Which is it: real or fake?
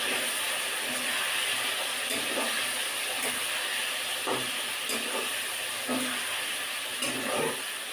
fake